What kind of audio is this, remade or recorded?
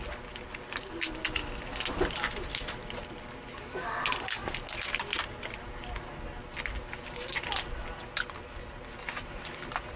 recorded